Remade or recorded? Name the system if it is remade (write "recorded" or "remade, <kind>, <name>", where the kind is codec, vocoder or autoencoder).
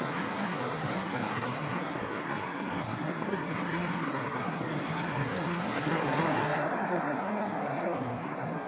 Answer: remade, codec, SNAC